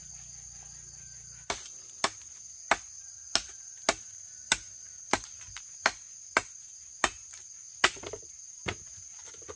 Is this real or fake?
real